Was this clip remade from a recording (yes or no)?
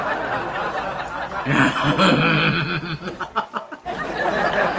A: no